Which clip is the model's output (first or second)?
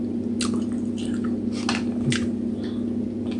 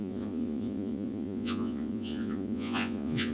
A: second